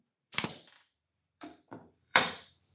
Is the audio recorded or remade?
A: remade